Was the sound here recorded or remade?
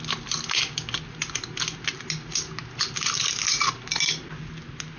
recorded